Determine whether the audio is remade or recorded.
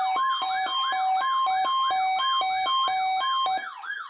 recorded